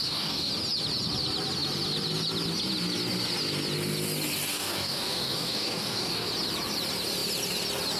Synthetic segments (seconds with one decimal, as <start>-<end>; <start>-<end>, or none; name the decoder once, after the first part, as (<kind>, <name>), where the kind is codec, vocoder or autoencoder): 0.0-0.5 (codec, DAC); 4.5-6.3